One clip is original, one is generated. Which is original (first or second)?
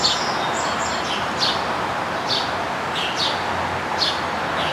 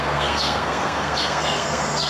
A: first